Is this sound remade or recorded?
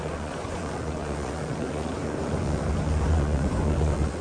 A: remade